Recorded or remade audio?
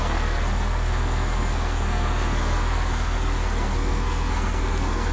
remade